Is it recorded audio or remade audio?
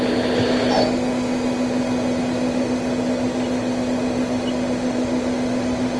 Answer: recorded